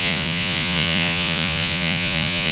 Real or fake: fake